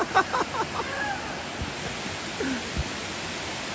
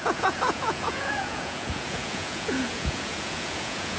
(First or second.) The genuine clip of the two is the first